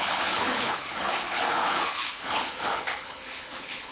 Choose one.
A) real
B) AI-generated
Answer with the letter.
B